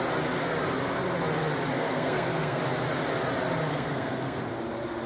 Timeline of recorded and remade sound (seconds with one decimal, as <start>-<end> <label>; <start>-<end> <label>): 0.0-1.7 recorded; 1.7-2.6 remade; 2.6-3.7 recorded; 3.7-4.4 remade; 4.4-5.1 recorded